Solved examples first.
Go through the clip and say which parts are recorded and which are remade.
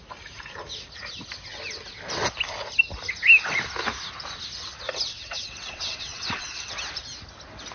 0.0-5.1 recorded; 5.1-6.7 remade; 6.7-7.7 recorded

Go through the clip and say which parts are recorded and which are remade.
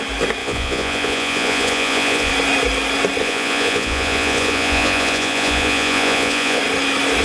0.0-0.4 recorded; 0.4-2.3 remade; 2.3-3.2 recorded; 3.2-6.6 remade; 6.6-7.2 recorded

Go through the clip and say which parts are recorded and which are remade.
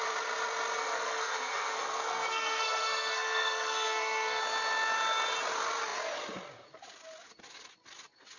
0.0-0.8 recorded; 0.8-4.4 remade; 4.4-8.4 recorded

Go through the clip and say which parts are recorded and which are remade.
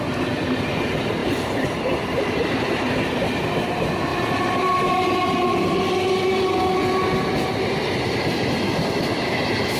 0.0-1.2 recorded; 1.2-2.4 remade; 2.4-4.1 recorded; 4.1-5.8 remade; 5.8-9.8 recorded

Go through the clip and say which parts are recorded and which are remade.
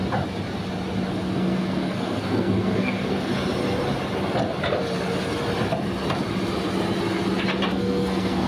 0.0-1.1 recorded; 1.1-3.3 remade; 3.3-7.7 recorded; 7.7-8.5 remade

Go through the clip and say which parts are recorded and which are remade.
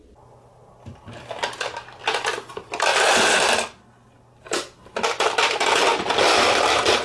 0.0-7.0 recorded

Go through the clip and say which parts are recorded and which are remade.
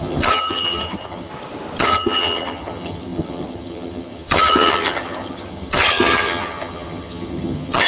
0.0-1.3 remade; 1.3-1.8 recorded; 1.8-7.9 remade